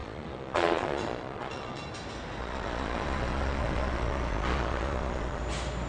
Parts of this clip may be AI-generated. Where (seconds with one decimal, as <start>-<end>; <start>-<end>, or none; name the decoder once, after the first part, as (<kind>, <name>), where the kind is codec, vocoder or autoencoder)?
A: 0.0-1.8 (vocoder, Vocos); 2.4-5.4